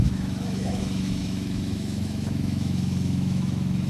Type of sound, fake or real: fake